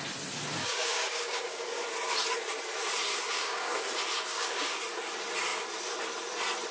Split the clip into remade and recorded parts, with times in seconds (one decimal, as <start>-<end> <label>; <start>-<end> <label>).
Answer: 0.0-0.6 recorded; 0.6-1.8 remade; 1.8-3.1 recorded; 3.1-3.7 remade; 3.7-4.3 recorded; 4.3-4.8 remade; 4.8-6.7 recorded